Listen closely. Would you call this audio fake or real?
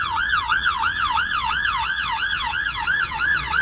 fake